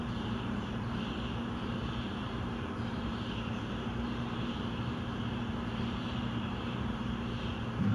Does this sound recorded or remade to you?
remade